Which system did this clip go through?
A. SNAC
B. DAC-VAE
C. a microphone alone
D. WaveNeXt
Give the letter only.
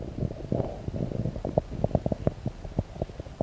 C